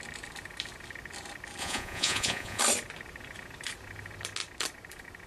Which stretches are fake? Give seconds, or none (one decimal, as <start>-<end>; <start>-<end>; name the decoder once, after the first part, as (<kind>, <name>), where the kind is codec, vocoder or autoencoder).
1.6-2.6 (vocoder, Vocos)